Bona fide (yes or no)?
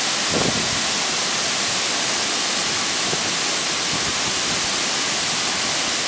yes